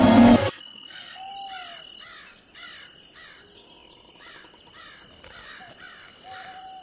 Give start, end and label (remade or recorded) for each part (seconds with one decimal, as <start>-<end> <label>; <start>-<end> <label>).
0.0-0.4 recorded; 0.4-1.3 remade; 1.3-6.8 recorded